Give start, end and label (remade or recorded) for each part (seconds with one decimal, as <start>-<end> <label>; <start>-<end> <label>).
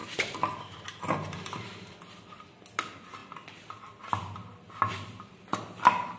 0.0-1.9 remade; 1.9-6.2 recorded